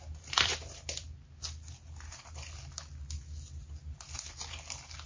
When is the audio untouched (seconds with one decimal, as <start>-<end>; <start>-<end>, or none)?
0.0-5.1